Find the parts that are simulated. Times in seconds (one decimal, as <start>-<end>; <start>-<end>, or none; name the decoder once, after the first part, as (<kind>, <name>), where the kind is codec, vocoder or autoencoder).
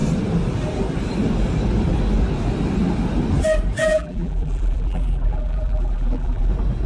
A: 3.8-6.5 (vocoder, BigVGAN v2)